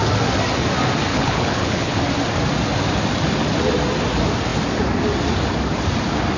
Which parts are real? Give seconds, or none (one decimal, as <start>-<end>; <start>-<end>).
0.0-1.1; 2.0-6.4